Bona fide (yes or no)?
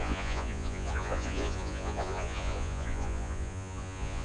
no